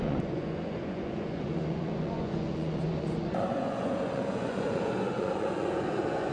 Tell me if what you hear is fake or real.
fake